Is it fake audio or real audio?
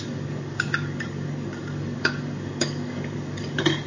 fake